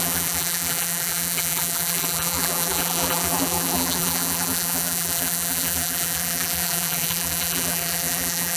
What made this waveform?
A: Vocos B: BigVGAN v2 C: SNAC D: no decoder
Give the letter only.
B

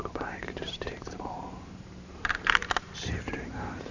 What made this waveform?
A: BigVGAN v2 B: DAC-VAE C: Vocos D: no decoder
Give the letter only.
A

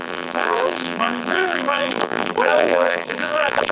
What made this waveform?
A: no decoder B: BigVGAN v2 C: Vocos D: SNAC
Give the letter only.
B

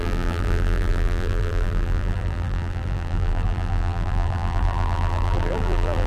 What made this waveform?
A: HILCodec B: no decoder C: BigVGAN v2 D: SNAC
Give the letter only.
C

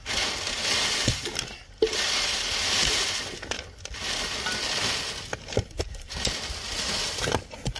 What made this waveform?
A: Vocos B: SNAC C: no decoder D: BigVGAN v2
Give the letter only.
C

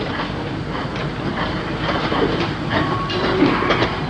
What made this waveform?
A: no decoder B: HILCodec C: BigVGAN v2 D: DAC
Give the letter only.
C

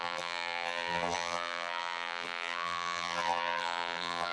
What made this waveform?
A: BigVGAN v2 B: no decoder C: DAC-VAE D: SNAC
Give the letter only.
A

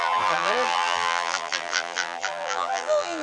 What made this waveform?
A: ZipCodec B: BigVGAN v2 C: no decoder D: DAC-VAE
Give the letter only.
B